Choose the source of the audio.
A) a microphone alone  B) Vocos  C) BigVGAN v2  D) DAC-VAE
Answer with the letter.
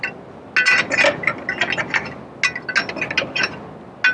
A